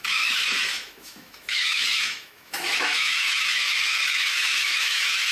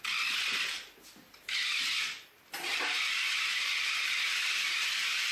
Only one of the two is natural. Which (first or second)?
second